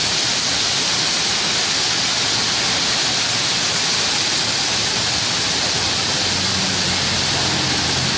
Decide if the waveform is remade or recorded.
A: recorded